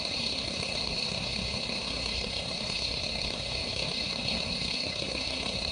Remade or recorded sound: remade